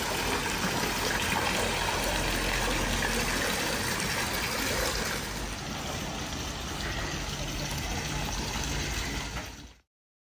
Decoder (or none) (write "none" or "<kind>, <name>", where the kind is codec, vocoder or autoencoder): none